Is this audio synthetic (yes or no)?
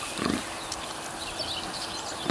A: no